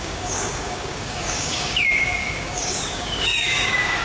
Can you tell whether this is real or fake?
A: fake